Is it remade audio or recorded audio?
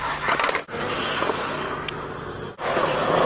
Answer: recorded